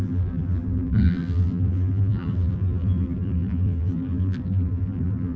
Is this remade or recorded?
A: remade